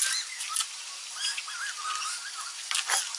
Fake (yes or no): no